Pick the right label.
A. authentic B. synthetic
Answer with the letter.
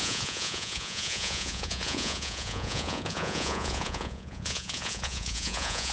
B